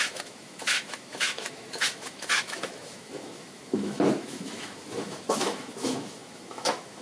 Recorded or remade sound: remade